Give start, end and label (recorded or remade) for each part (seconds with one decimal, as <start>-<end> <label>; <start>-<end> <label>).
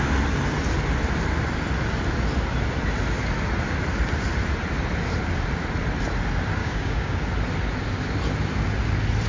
0.0-6.6 recorded; 6.6-7.2 remade; 7.2-9.3 recorded